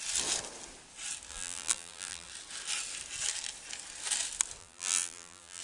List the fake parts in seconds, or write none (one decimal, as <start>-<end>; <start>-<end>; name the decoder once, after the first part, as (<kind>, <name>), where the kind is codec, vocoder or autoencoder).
1.3-2.3 (vocoder, BigVGAN v2); 4.6-5.6